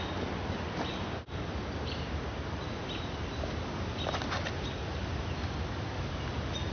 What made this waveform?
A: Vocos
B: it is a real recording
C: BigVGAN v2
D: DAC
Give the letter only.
B